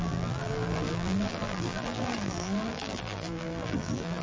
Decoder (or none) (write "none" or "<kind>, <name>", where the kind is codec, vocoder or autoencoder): vocoder, BigVGAN v2